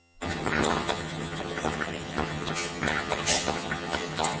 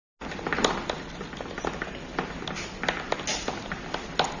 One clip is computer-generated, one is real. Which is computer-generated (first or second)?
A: first